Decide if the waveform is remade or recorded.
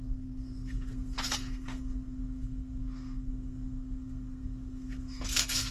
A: remade